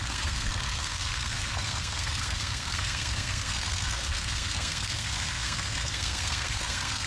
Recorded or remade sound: remade